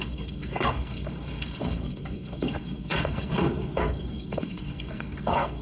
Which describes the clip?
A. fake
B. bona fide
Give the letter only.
A